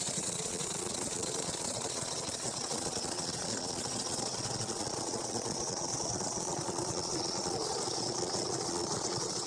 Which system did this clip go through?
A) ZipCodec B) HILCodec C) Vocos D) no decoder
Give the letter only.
C